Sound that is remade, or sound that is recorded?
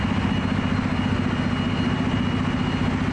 recorded